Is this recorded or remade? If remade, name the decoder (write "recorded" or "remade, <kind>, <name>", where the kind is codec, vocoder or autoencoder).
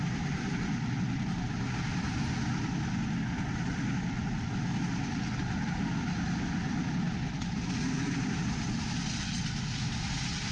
recorded